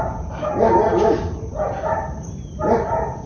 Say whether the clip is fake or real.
real